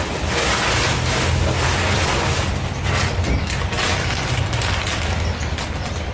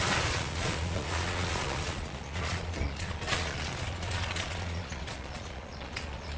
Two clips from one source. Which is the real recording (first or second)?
first